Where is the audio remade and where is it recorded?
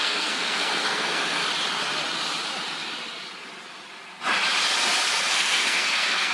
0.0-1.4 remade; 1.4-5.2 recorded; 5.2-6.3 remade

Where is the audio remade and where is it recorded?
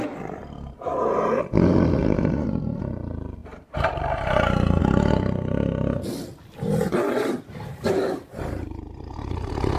0.0-0.4 recorded; 0.4-1.4 remade; 1.4-2.0 recorded; 2.0-2.8 remade; 2.8-3.4 recorded; 3.4-4.8 remade; 4.8-7.7 recorded; 7.7-8.6 remade; 8.6-9.8 recorded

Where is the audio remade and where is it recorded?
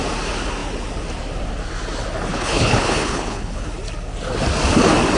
0.0-2.3 recorded; 2.3-3.7 remade; 3.7-5.2 recorded